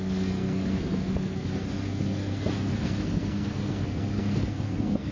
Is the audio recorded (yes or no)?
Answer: no